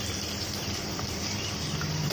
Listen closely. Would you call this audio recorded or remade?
remade